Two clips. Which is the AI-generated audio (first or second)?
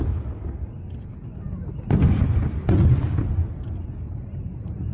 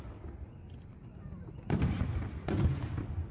second